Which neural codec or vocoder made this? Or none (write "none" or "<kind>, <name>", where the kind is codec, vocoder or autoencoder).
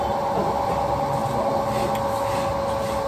none